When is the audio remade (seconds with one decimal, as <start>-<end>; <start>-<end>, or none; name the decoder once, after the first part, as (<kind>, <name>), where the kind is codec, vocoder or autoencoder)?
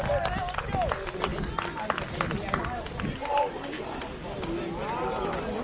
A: none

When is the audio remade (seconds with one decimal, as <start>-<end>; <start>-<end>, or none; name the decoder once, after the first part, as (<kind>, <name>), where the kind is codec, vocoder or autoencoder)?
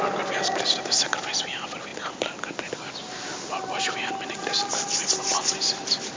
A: none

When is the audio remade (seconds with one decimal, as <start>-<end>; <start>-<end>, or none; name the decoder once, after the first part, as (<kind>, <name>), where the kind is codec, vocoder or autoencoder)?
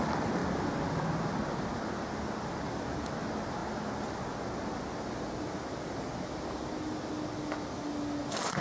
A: none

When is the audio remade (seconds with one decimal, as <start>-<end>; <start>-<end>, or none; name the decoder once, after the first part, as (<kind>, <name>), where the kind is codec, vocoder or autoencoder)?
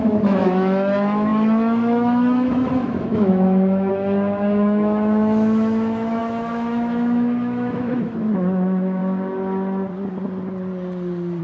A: 0.0-9.0 (autoencoder, DAC-VAE)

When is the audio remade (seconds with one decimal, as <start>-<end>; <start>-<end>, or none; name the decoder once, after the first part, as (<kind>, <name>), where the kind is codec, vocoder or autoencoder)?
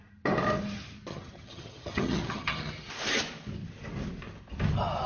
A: 1.1-2.9 (vocoder, HiFi-GAN)